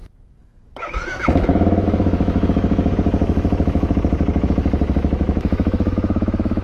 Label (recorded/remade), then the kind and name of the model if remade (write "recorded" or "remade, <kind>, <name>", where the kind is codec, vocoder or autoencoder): remade, autoencoder, DAC-VAE